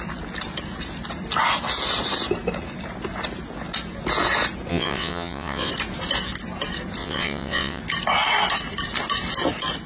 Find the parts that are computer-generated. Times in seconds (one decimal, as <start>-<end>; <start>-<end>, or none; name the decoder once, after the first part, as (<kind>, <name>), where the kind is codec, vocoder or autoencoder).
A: 4.7-5.7 (vocoder, WaveNeXt); 7.0-7.8